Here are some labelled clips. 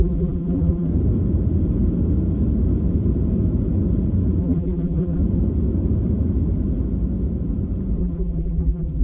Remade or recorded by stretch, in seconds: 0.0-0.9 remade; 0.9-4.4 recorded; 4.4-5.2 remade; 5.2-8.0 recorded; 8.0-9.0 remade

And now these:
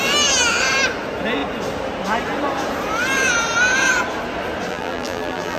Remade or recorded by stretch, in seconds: 0.0-4.7 recorded; 4.7-5.6 remade

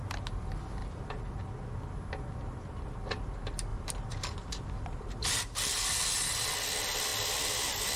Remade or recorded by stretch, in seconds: 0.0-0.8 recorded; 0.8-1.4 remade; 1.4-3.7 recorded; 3.7-6.5 remade; 6.5-8.0 recorded

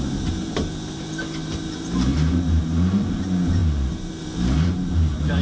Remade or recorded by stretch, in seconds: 0.0-5.4 remade

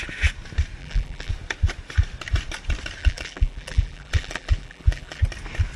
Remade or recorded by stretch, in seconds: 0.0-0.8 recorded; 0.8-1.3 remade; 1.3-3.0 recorded; 3.0-5.2 remade; 5.2-5.8 recorded

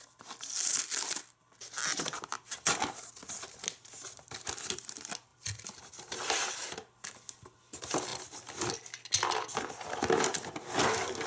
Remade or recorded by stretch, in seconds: 0.0-5.3 recorded; 5.3-6.5 remade; 6.5-11.3 recorded

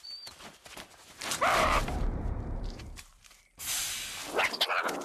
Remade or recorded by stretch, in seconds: 0.0-3.8 remade; 3.8-5.0 recorded